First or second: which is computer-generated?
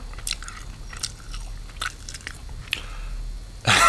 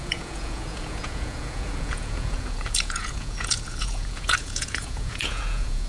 second